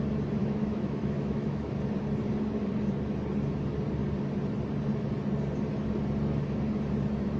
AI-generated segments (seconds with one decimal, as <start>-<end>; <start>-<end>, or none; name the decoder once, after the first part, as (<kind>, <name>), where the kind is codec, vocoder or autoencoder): 0.4-1.7 (autoencoder, DAC-VAE)